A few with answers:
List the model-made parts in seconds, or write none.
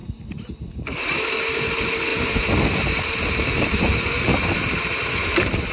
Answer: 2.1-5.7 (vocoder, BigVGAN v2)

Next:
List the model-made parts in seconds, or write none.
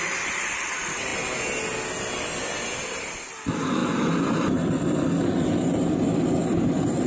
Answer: none